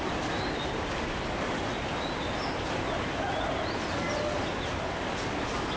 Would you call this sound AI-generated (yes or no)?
no